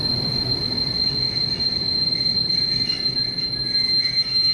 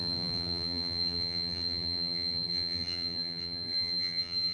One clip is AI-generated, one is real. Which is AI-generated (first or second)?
second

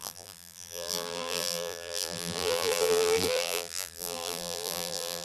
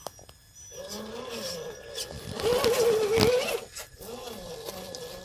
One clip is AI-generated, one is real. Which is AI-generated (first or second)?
first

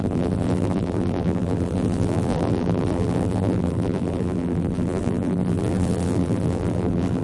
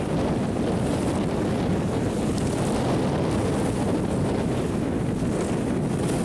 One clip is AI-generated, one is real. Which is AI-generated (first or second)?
first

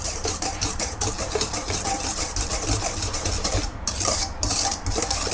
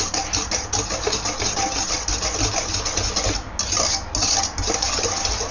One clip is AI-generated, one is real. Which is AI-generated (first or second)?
first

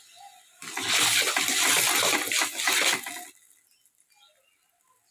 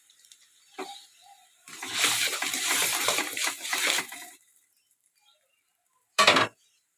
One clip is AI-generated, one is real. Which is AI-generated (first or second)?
second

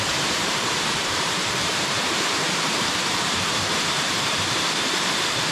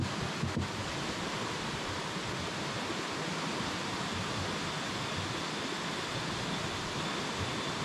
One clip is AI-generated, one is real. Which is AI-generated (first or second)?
first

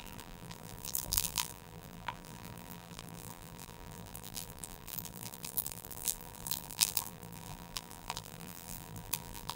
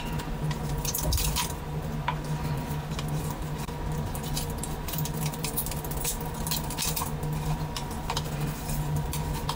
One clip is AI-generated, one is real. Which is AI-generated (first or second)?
first